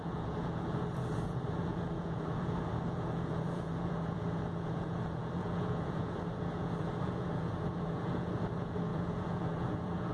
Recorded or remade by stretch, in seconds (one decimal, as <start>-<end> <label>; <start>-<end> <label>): 0.0-10.1 remade